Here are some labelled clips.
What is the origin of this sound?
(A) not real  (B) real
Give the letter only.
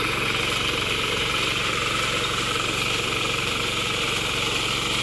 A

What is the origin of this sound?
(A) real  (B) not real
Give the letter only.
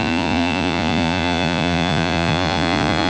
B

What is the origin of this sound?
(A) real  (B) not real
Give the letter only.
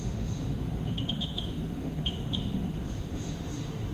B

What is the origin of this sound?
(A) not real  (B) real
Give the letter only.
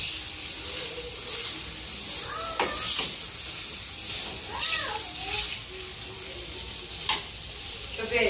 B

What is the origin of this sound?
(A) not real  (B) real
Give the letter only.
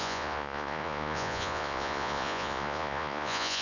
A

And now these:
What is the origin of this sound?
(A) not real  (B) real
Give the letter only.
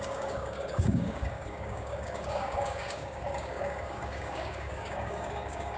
A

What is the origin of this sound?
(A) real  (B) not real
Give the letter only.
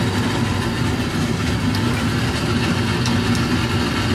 A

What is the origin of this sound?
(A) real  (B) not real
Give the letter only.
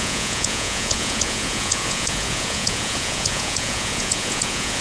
B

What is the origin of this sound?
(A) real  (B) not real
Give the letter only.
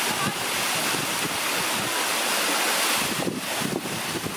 A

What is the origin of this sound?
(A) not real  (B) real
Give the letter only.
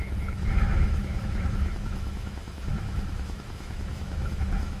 A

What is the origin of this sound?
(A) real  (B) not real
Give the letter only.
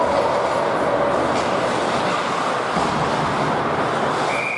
A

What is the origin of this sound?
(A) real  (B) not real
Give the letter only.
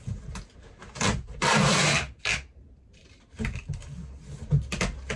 A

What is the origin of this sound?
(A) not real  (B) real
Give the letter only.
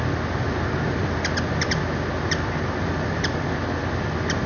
B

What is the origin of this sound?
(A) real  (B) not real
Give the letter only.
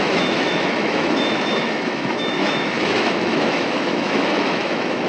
B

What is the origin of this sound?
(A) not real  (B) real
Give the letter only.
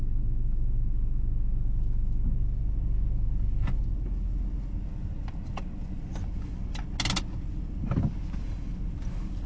B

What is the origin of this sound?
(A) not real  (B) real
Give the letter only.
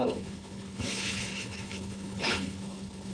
A